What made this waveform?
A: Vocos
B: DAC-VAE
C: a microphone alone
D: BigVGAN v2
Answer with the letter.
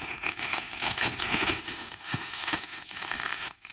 B